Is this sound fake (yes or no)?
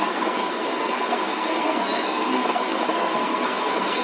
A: yes